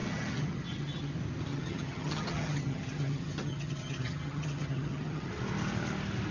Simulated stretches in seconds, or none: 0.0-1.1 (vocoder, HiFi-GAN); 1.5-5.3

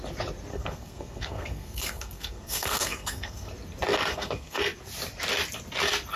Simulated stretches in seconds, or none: 0.5-3.5 (codec, SNAC); 4.1-4.6

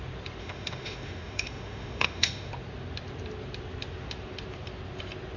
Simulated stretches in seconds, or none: 0.4-2.5 (autoencoder, DAC-VAE)

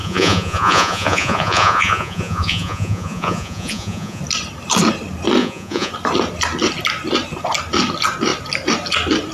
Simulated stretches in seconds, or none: 0.0-4.2 (vocoder, Vocos); 5.4-5.9

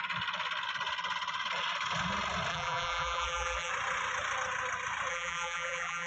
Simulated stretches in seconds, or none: 2.5-3.7 (vocoder, BigVGAN v2); 5.1-6.1

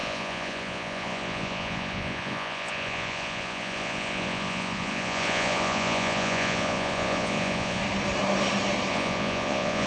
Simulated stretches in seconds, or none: 0.0-7.8 (vocoder, Vocos); 8.9-9.9

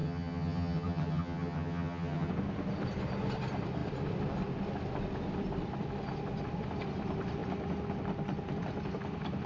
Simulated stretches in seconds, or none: 0.0-2.3 (vocoder, HiFi-GAN)